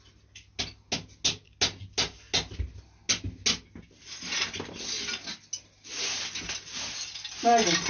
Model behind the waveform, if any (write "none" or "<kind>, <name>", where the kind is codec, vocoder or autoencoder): none